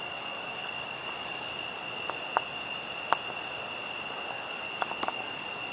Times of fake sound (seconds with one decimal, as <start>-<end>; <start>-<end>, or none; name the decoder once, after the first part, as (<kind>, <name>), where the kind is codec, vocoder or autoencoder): 0.0-1.5 (codec, DAC); 4.3-5.7